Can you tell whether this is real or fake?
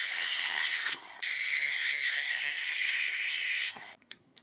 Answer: fake